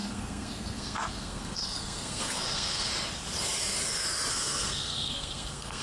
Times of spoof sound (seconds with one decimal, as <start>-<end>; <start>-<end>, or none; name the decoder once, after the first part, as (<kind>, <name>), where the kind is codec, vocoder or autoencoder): 0.0-2.9 (codec, SNAC); 4.3-5.8